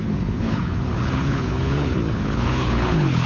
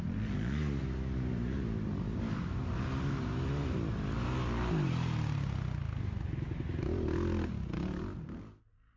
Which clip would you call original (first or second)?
second